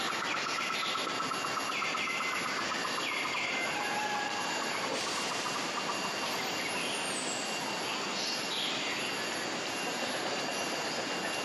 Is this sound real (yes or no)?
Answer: yes